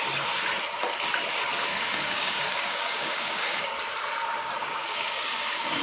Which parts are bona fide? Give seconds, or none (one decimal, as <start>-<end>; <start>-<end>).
0.0-1.7; 3.7-4.6